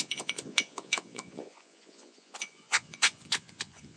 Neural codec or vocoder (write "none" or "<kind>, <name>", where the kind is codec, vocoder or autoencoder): vocoder, Vocos